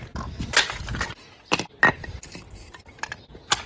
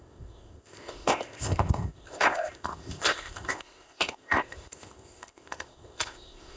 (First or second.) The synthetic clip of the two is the second